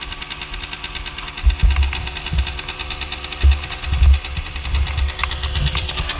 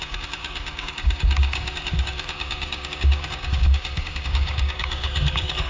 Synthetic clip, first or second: second